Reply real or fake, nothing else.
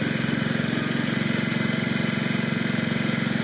fake